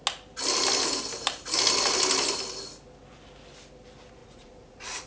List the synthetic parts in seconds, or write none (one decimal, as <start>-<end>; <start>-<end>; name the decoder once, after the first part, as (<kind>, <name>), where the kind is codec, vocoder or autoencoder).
4.2-5.1 (vocoder, Vocos)